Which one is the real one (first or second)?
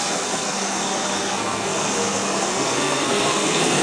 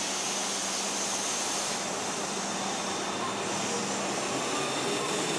second